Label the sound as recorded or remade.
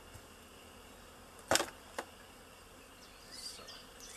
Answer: recorded